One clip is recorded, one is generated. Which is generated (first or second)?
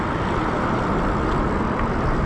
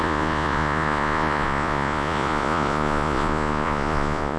second